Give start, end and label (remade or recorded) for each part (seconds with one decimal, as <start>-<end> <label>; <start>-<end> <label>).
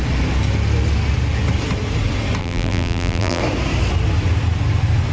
0.0-2.4 recorded; 2.4-3.4 remade; 3.4-5.1 recorded